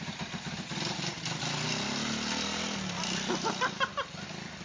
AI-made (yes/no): no